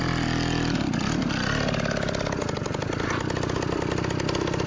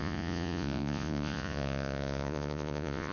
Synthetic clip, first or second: second